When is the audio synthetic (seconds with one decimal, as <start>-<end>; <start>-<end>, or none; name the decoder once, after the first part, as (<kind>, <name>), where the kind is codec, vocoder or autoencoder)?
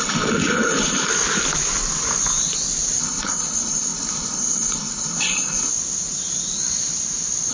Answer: 0.0-1.1 (codec, HILCodec); 3.0-5.7